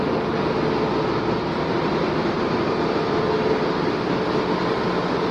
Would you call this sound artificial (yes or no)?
no